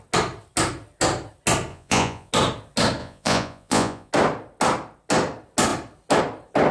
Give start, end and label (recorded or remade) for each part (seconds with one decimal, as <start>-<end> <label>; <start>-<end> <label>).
0.0-1.7 recorded; 1.7-2.3 remade; 2.3-3.0 recorded; 3.0-4.1 remade; 4.1-6.7 recorded

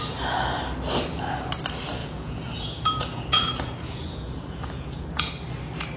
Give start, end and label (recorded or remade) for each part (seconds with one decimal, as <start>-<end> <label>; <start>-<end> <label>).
0.0-2.0 recorded; 2.0-5.3 remade; 5.3-6.0 recorded